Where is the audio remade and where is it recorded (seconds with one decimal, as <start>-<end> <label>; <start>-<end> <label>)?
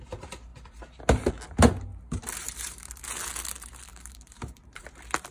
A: 0.0-1.9 recorded; 1.9-3.0 remade; 3.0-3.9 recorded; 3.9-4.8 remade; 4.8-5.3 recorded